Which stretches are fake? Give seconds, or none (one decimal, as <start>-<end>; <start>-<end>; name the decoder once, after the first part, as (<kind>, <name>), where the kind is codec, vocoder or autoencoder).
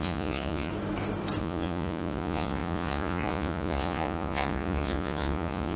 0.0-0.7 (vocoder, Vocos); 1.4-5.8